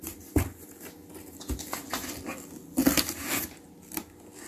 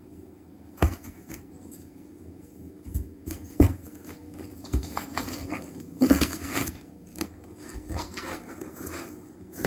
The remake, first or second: second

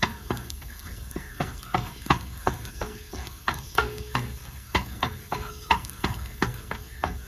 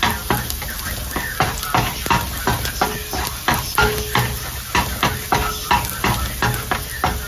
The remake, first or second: first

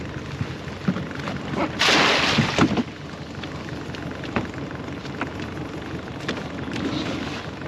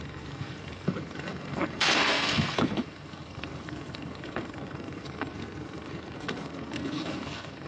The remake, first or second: second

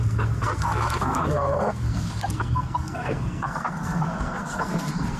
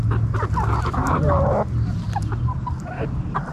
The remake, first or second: first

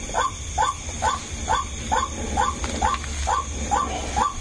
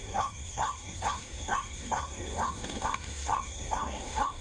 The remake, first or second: second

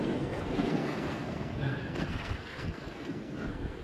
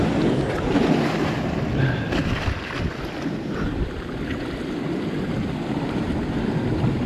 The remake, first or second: first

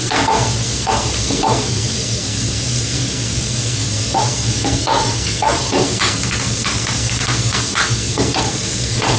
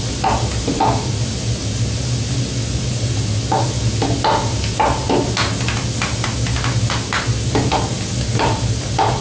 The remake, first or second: first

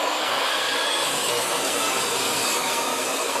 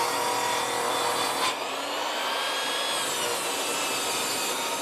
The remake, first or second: first